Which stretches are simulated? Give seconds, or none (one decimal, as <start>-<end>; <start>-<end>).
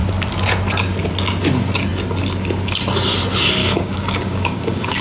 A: 3.6-5.0